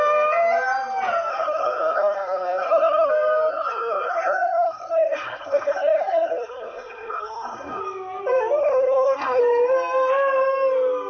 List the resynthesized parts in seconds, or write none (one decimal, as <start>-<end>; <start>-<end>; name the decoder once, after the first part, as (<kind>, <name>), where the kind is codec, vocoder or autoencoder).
1.3-3.1 (codec, SNAC); 3.5-7.8; 8.6-9.4